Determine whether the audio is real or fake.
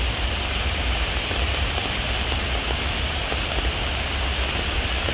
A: real